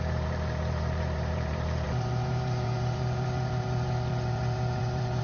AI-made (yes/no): yes